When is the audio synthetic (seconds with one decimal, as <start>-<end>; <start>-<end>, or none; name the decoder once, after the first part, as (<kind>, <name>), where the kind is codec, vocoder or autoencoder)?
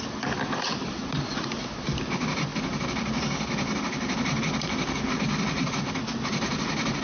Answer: none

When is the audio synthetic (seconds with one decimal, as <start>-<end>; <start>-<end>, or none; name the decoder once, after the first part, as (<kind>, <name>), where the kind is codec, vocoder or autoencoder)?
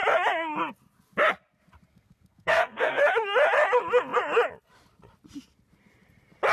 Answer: 1.9-3.0 (codec, SNAC)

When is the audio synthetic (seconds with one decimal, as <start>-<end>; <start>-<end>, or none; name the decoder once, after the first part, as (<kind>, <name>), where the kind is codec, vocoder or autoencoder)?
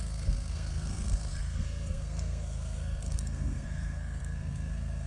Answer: 0.0-5.1 (codec, SNAC)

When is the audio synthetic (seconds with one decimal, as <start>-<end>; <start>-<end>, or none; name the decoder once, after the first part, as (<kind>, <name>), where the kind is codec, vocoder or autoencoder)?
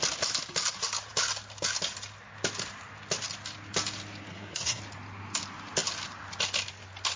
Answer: 4.3-4.8 (codec, SNAC)